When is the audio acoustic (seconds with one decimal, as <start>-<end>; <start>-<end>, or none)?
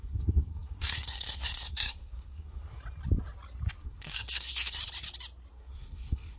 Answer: 2.7-3.8; 4.8-5.5